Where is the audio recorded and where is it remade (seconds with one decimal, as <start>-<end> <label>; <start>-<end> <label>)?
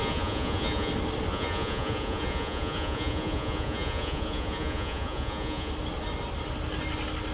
0.0-0.9 remade; 0.9-1.3 recorded; 1.3-5.7 remade; 5.7-7.3 recorded